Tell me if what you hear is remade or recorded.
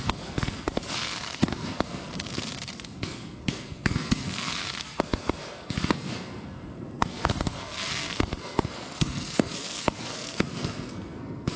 remade